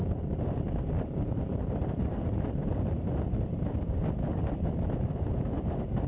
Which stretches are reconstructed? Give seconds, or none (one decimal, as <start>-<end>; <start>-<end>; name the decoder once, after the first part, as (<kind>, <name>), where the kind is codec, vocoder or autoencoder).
none